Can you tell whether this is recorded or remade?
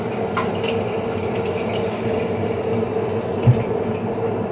recorded